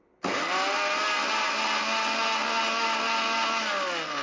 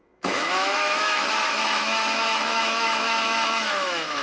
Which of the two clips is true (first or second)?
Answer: first